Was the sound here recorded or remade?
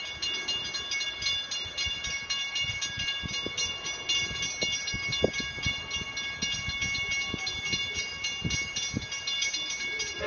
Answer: recorded